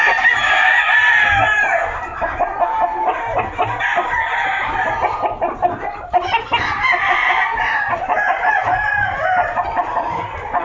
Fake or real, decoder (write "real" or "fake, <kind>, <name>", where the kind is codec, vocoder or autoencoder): real